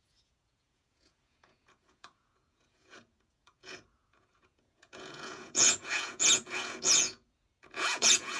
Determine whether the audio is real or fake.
fake